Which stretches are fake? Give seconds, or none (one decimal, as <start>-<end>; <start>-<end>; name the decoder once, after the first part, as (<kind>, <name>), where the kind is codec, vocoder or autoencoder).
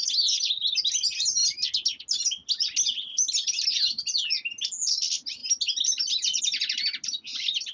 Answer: none